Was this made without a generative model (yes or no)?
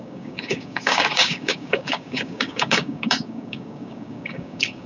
no